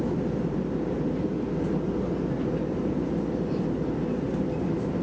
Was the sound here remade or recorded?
recorded